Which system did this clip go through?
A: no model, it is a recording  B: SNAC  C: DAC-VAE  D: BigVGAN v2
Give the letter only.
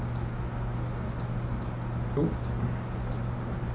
A